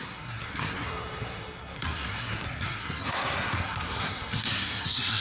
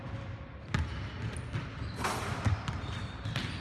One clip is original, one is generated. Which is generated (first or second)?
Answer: first